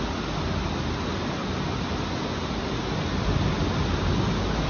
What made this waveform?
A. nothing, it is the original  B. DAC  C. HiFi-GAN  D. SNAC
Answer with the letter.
A